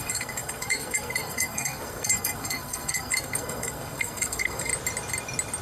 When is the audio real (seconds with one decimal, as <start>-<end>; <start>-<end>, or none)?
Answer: 4.7-5.6